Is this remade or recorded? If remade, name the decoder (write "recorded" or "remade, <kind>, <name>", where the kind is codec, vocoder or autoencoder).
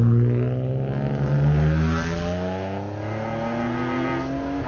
recorded